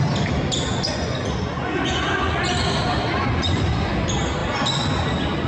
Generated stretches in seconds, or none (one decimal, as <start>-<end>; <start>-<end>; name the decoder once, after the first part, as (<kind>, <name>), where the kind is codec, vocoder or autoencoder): 0.7-2.4 (vocoder, Vocos); 3.1-3.9